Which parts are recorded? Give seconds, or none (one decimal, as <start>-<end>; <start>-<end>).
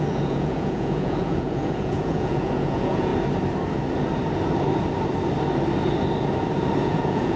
3.1-6.8